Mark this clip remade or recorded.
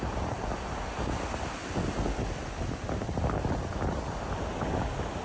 recorded